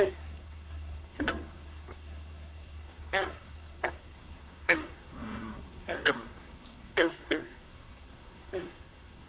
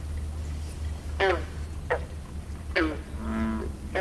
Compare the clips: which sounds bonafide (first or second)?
second